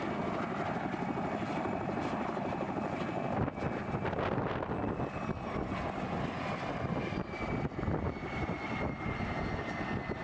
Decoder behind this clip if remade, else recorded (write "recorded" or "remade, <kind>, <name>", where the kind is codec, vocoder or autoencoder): recorded